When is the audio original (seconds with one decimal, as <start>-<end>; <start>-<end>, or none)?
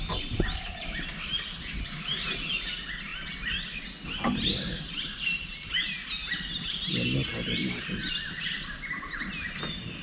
0.0-10.0